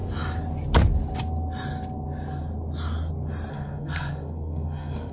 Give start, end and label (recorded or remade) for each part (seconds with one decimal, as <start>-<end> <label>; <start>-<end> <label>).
0.0-3.5 recorded; 3.5-5.1 remade